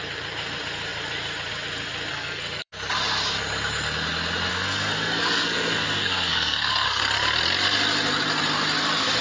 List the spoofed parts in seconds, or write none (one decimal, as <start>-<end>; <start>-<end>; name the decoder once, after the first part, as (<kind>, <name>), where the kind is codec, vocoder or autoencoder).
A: 2.1-2.7 (codec, SNAC); 4.5-7.0